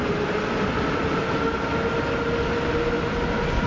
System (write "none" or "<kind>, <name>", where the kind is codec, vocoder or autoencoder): none